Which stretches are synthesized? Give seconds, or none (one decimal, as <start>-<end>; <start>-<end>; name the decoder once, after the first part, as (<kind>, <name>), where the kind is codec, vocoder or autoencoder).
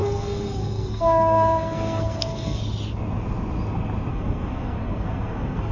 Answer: 0.0-2.6 (codec, SNAC); 4.1-5.7